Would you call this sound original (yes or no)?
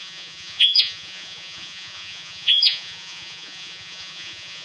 no